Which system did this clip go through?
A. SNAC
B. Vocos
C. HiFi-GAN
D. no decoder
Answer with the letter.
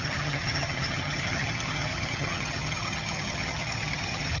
C